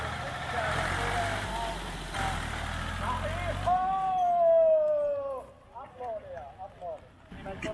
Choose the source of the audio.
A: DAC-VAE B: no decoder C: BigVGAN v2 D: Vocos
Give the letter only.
B